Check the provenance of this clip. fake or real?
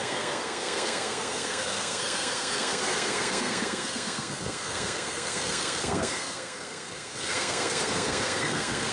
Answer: fake